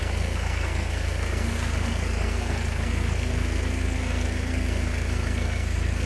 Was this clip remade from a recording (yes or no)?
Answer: yes